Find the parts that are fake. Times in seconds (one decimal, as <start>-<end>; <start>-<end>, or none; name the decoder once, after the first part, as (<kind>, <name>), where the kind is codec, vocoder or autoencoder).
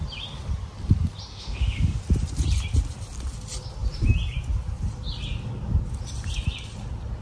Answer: 1.3-2.0 (autoencoder, DAC-VAE)